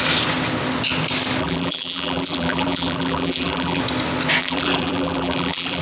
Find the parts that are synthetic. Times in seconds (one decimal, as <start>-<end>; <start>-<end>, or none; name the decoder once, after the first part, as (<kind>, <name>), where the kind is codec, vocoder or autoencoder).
1.4-3.8 (vocoder, BigVGAN v2); 4.4-5.8